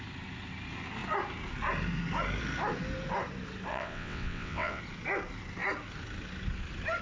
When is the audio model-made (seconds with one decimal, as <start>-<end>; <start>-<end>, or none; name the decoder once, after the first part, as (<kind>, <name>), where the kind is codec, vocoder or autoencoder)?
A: 3.7-4.8 (vocoder, WaveNeXt)